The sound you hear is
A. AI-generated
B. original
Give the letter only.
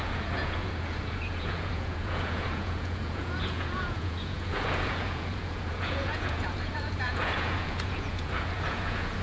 A